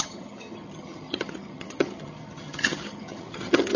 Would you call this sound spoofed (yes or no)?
yes